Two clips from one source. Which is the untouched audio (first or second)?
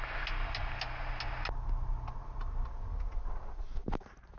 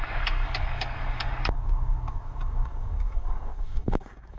first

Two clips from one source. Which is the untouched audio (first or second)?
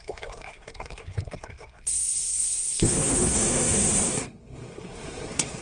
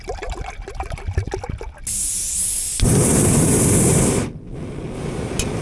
second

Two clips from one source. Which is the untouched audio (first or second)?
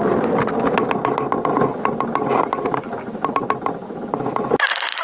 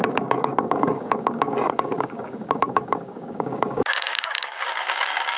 first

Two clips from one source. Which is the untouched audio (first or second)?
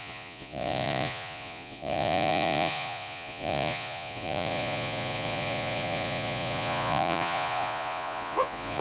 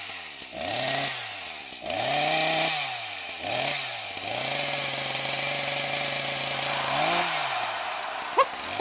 second